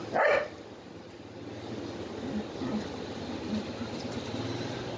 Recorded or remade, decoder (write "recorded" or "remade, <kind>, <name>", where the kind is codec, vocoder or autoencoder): recorded